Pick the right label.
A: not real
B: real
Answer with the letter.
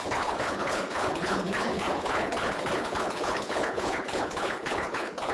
A